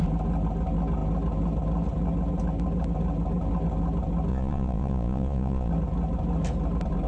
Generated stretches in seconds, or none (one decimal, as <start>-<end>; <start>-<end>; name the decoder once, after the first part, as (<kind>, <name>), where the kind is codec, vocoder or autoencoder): 4.3-5.7 (vocoder, Vocos)

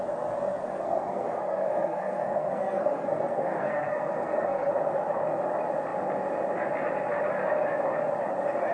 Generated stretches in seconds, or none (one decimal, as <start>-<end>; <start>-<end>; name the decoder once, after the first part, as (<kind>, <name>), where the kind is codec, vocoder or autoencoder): 0.6-4.7 (codec, SNAC)

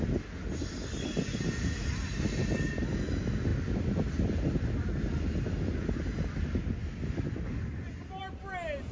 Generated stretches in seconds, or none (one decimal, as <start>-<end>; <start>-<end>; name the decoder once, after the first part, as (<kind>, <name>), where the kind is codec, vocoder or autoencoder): none

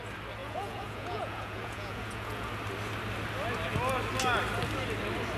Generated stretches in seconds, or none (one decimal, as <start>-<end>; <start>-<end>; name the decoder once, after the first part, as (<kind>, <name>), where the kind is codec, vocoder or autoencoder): 0.4-2.5 (vocoder, Vocos)